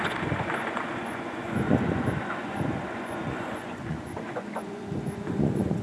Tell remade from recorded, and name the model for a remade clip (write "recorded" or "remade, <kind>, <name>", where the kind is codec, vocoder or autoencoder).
remade, vocoder, Vocos